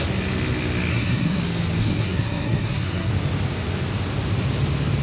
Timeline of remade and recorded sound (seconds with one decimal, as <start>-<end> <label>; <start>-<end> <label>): 0.0-0.9 recorded; 0.9-1.4 remade; 1.4-1.8 recorded; 1.8-3.1 remade; 3.1-5.0 recorded